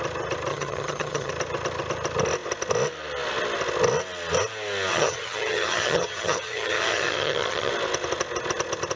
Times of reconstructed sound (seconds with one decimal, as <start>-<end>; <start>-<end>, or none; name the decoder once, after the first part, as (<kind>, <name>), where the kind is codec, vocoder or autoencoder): 0.5-1.3 (vocoder, HiFi-GAN); 4.9-7.7